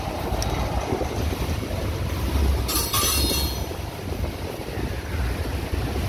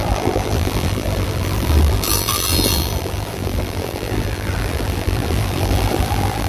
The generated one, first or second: second